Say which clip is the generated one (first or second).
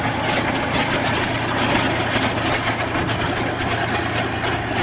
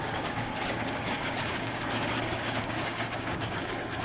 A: second